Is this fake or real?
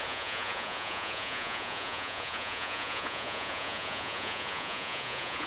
fake